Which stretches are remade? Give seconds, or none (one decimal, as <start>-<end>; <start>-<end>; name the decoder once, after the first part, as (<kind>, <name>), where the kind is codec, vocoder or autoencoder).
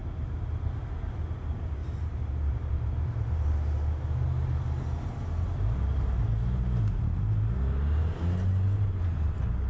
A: 1.8-4.0 (vocoder, BigVGAN v2)